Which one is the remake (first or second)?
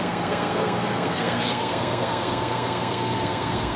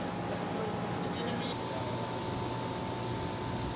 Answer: first